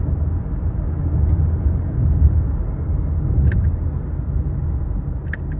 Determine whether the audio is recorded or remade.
recorded